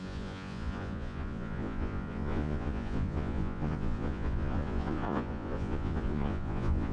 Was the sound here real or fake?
fake